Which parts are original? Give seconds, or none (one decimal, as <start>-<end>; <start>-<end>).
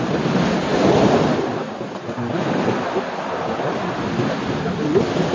0.0-5.3